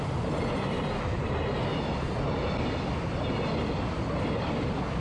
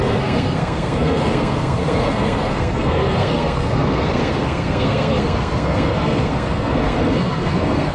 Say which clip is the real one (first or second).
first